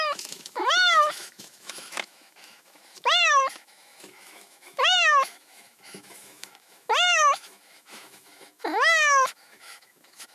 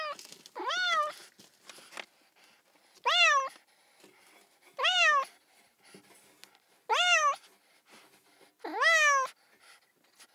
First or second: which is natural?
second